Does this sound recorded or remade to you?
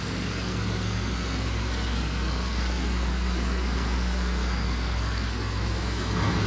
remade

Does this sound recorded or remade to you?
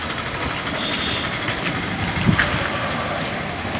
recorded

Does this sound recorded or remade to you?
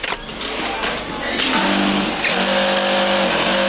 recorded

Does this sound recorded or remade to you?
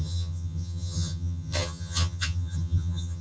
remade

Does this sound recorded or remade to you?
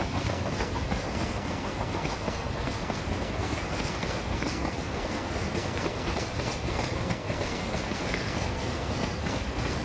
remade